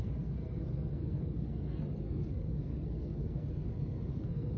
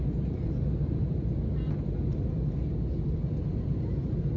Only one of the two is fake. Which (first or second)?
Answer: first